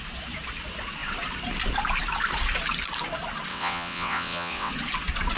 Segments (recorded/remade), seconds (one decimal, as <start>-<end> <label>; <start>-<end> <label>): 0.0-3.5 recorded; 3.5-4.7 remade; 4.7-5.4 recorded